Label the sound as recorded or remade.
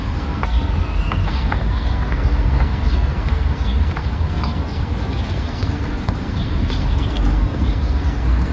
remade